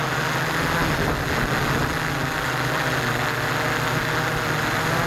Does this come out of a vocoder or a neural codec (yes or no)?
no